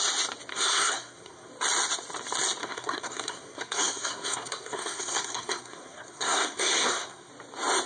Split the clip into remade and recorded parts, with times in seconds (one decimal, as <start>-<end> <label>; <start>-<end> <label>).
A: 0.0-0.5 recorded; 0.5-1.5 remade; 1.5-2.6 recorded; 2.6-7.3 remade; 7.3-7.9 recorded